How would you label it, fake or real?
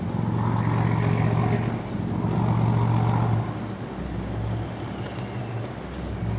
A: real